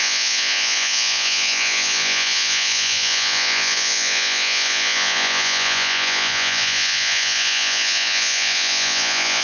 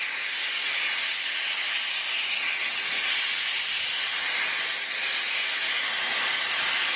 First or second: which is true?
second